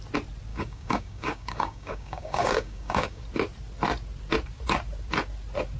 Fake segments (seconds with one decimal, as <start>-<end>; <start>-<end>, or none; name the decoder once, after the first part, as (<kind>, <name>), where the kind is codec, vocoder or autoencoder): 0.5-3.2 (codec, DAC)